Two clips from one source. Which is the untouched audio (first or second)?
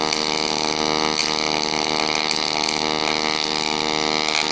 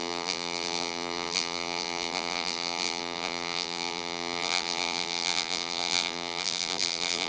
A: first